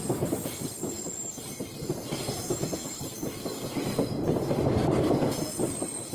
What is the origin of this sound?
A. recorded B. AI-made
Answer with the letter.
A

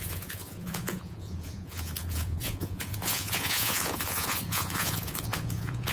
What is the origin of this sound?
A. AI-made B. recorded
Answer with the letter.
A